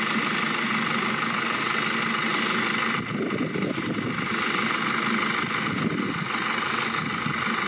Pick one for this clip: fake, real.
real